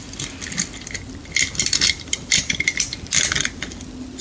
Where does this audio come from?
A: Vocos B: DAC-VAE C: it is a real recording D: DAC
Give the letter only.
C